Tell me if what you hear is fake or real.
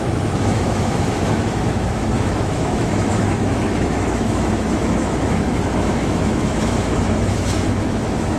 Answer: fake